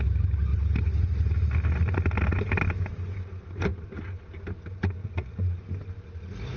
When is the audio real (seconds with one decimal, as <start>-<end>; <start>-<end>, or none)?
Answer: 0.0-5.0; 5.6-6.6